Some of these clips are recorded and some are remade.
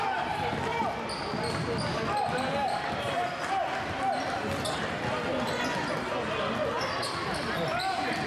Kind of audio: recorded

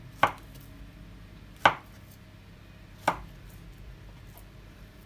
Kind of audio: recorded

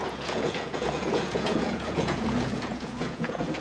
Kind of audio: remade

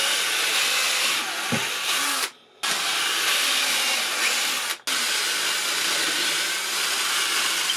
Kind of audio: recorded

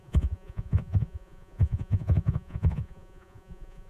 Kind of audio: remade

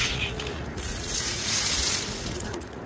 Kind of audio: remade